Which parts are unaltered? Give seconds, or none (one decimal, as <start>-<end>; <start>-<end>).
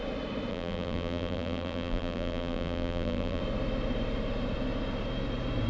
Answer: 0.0-0.5; 3.4-5.7